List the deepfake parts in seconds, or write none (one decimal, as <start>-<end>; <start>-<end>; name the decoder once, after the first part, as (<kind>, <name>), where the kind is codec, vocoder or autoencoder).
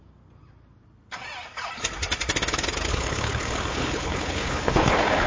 2.9-5.3 (codec, HILCodec)